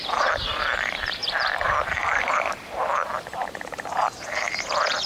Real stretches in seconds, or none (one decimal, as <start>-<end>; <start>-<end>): none